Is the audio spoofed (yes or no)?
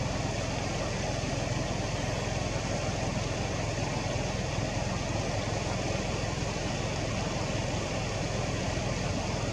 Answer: no